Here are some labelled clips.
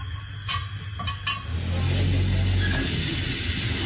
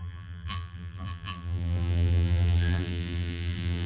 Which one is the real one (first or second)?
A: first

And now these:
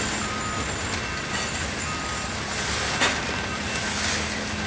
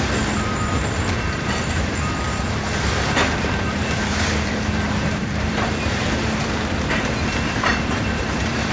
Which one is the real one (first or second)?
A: first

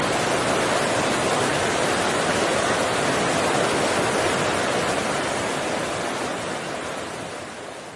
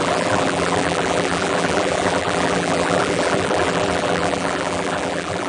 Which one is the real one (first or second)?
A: first